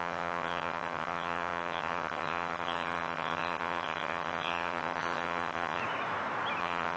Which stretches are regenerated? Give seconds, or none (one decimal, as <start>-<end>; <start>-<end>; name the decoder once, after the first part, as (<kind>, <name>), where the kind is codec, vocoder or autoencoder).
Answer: 0.0-5.8 (vocoder, HiFi-GAN); 6.6-7.0